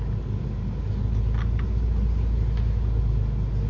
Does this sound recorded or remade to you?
recorded